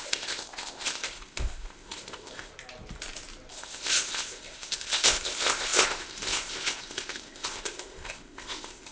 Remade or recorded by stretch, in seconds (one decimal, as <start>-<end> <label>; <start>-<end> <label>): 0.0-2.5 remade; 2.5-3.5 recorded; 3.5-8.9 remade